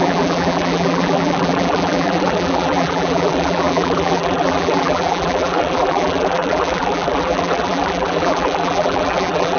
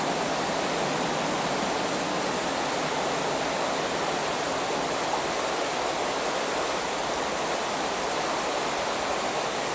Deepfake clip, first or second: first